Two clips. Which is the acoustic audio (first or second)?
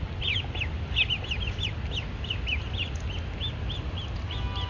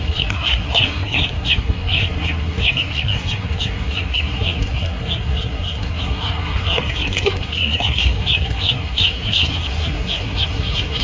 first